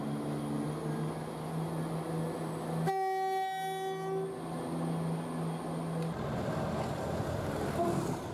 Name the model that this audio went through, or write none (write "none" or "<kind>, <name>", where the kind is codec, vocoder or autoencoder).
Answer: none